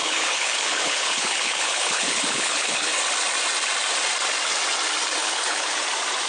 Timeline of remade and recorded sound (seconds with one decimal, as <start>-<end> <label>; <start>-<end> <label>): 0.0-2.9 remade; 2.9-5.2 recorded; 5.2-5.7 remade; 5.7-6.3 recorded